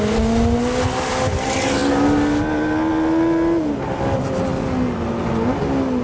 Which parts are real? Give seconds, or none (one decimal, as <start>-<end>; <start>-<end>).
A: 0.0-6.0